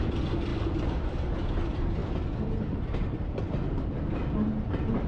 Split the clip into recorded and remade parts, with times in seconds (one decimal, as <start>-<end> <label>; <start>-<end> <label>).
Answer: 0.0-5.1 recorded